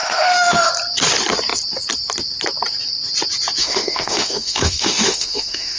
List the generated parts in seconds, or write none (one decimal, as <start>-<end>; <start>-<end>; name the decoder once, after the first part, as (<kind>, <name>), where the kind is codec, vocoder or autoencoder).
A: 0.0-0.7 (autoencoder, DAC-VAE); 3.6-5.8